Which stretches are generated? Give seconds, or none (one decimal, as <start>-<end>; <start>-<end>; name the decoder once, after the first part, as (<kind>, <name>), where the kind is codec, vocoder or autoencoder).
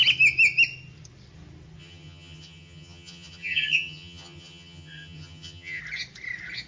1.8-5.8 (vocoder, HiFi-GAN)